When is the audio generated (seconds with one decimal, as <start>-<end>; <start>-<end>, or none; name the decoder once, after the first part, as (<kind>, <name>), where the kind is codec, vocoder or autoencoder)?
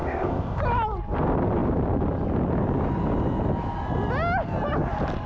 0.0-0.6 (codec, ZipCodec)